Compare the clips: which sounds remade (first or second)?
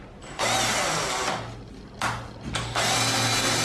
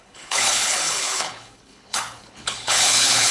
second